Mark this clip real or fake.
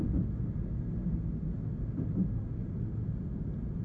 real